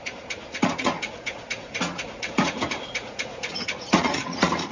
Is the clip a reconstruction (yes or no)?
yes